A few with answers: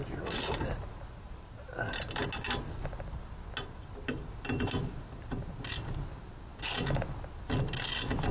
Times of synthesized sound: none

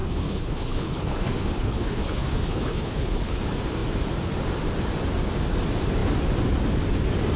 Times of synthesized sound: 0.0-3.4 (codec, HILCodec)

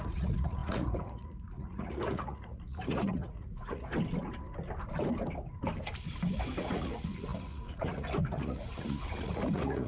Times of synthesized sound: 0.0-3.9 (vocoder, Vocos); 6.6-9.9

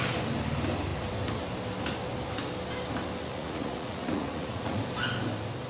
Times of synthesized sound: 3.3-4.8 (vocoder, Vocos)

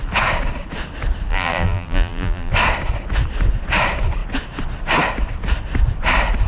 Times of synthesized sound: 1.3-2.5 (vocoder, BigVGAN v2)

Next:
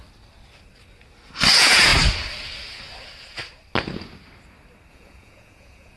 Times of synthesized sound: 1.5-1.9 (vocoder, Vocos); 4.9-6.0

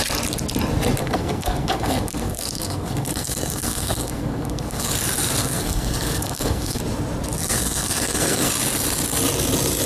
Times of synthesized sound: 1.0-4.9 (codec, SNAC); 5.4-6.8; 7.4-8.5